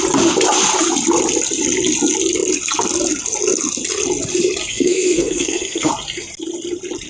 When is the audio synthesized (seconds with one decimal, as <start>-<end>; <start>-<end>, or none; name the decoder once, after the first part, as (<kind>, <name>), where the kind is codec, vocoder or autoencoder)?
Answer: 4.7-5.9 (codec, SNAC)